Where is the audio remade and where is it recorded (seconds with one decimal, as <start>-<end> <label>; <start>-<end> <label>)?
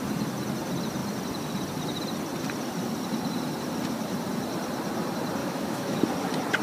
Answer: 0.0-5.4 recorded; 5.4-6.0 remade; 6.0-6.6 recorded